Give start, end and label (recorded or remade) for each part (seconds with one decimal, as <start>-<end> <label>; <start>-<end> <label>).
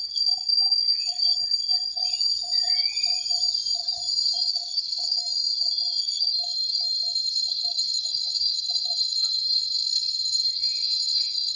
0.0-2.0 remade; 2.0-4.5 recorded; 4.5-5.3 remade; 5.3-6.0 recorded; 6.0-11.6 remade